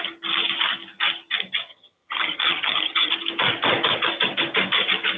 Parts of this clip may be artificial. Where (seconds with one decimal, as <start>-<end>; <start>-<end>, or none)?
1.7-3.1